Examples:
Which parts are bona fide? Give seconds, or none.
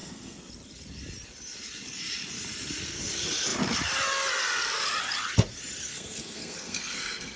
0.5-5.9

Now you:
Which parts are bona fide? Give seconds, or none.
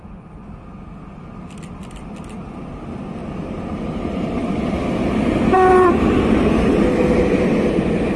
0.0-8.2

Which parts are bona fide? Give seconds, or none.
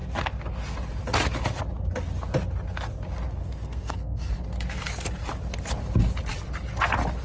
0.0-3.4; 4.3-7.2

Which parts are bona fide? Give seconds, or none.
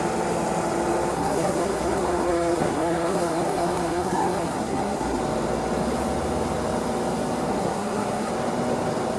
0.0-1.1; 5.2-7.5; 8.3-9.2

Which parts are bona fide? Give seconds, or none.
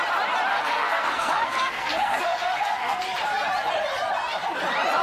0.0-0.5; 3.0-5.0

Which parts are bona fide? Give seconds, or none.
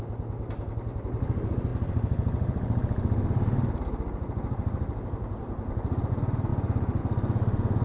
0.0-7.8